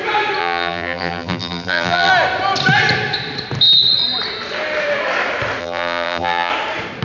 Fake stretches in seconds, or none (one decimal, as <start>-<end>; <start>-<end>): 0.4-2.1; 5.6-6.5